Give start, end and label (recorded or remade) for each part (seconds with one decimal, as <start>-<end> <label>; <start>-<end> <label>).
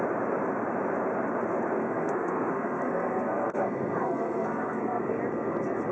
0.0-1.8 recorded; 1.8-5.0 remade; 5.0-5.9 recorded